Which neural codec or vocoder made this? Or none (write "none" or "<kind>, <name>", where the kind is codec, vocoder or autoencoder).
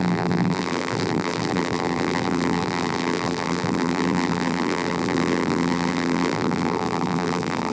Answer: vocoder, BigVGAN v2